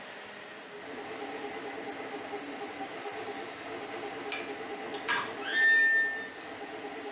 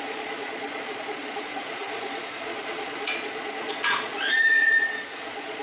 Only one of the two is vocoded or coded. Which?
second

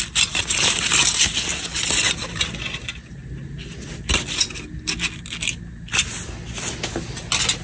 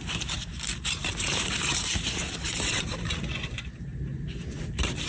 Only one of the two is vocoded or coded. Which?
second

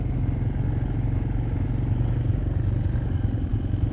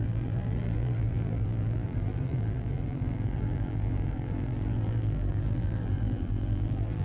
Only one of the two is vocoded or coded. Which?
second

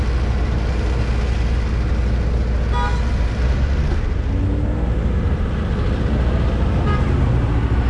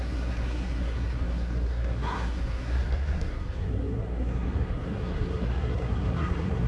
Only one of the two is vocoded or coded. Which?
second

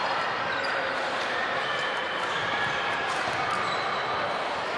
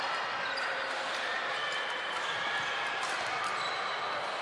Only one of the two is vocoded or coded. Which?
first